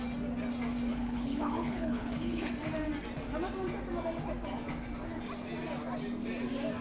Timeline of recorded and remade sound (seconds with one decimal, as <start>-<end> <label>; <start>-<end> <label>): 0.0-0.9 recorded; 0.9-2.5 remade; 2.5-6.8 recorded